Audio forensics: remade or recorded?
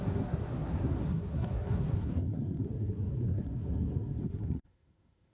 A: remade